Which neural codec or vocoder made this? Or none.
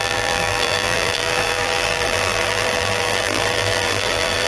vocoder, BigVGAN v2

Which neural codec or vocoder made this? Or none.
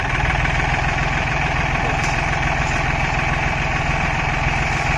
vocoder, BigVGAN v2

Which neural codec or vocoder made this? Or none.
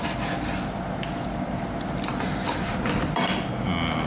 none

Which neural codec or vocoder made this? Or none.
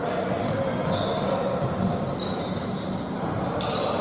vocoder, BigVGAN v2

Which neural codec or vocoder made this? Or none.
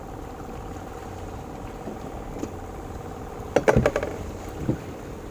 none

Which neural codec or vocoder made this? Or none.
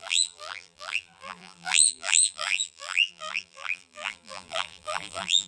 vocoder, BigVGAN v2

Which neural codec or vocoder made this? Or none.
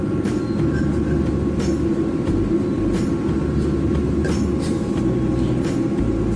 none